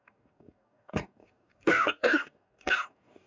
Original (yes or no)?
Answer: no